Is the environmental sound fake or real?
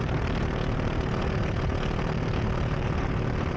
fake